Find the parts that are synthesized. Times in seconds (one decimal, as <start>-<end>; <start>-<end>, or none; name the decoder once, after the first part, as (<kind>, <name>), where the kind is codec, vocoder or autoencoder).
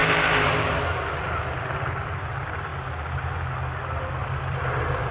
4.2-5.1 (vocoder, BigVGAN v2)